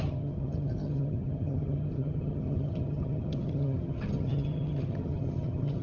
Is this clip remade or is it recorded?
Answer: remade